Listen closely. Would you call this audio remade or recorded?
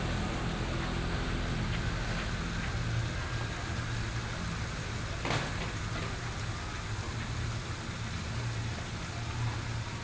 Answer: recorded